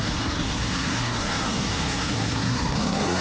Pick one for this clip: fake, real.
fake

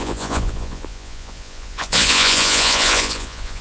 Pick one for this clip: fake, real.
fake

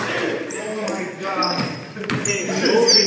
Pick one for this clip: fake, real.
fake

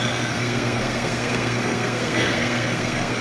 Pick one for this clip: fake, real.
fake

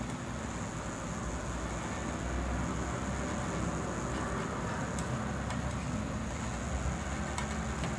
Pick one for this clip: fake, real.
real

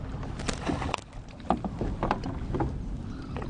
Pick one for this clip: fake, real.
real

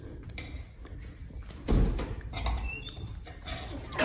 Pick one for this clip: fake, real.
real